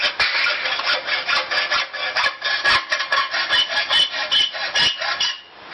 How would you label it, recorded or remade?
recorded